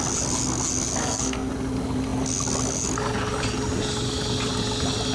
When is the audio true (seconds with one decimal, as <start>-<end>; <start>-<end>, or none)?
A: 0.0-1.0; 1.5-5.1